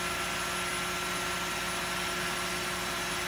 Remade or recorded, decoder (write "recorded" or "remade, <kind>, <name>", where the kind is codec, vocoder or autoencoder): recorded